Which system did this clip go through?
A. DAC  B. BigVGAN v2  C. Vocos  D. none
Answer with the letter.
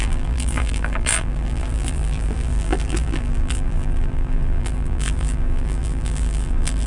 B